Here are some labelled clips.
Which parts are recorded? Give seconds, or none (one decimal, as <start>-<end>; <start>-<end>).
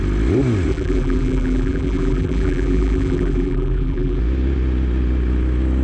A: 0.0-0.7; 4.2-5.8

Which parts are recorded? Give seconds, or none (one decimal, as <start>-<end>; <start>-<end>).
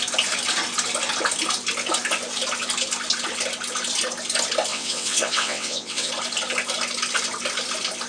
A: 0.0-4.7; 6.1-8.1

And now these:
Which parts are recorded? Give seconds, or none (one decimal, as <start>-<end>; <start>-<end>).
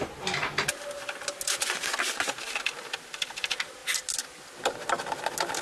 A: 0.0-5.6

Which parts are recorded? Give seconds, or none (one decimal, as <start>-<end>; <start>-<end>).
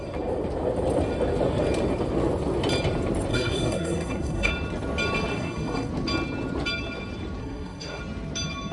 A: 0.0-3.3; 4.5-5.3; 5.9-7.4; 8.0-8.7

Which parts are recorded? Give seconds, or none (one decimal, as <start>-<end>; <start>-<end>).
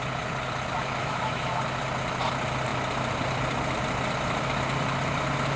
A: 0.0-1.0; 1.6-5.6